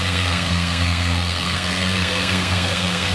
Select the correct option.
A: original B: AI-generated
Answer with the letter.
B